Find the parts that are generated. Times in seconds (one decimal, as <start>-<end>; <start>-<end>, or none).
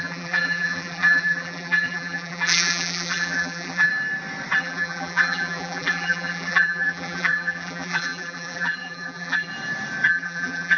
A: 0.0-3.9; 4.6-9.5; 10.1-10.8